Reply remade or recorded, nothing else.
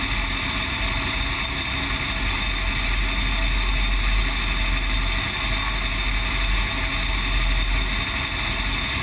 recorded